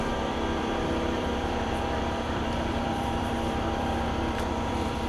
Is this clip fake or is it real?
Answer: fake